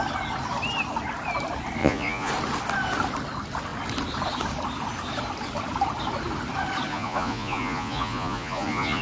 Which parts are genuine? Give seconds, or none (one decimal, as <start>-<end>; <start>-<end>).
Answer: 0.0-1.8; 2.3-6.9